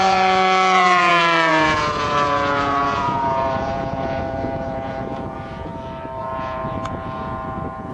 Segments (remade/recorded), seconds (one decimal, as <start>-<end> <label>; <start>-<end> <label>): 0.0-5.7 remade; 5.7-6.2 recorded; 6.2-7.9 remade

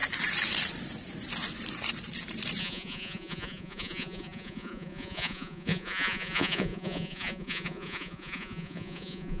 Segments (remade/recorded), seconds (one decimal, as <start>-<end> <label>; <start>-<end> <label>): 0.0-2.6 recorded; 2.6-9.4 remade

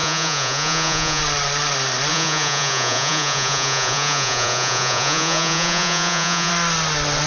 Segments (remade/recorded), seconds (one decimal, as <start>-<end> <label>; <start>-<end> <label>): 0.0-1.2 remade; 1.2-2.1 recorded; 2.1-6.5 remade; 6.5-7.3 recorded

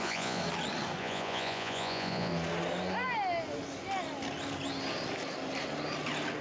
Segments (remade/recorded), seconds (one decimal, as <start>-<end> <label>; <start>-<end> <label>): 0.0-0.4 remade; 0.4-1.0 recorded; 1.0-2.3 remade; 2.3-6.4 recorded

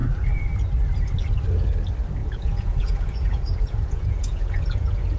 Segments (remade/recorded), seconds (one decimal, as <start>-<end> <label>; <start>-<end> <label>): 0.0-2.2 recorded; 2.2-5.2 remade

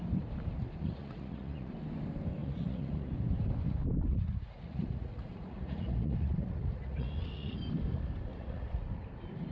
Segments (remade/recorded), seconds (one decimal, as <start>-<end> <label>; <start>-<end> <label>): 0.0-0.8 recorded; 0.8-1.7 remade; 1.7-2.4 recorded; 2.4-3.1 remade; 3.1-4.1 recorded; 4.1-7.6 remade; 7.6-8.3 recorded; 8.3-8.9 remade; 8.9-9.5 recorded

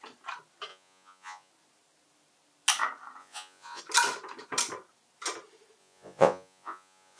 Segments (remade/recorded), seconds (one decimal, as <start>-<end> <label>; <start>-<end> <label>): 0.0-0.7 recorded; 0.7-1.5 remade; 1.5-3.2 recorded; 3.2-3.8 remade; 3.8-5.8 recorded; 5.8-7.2 remade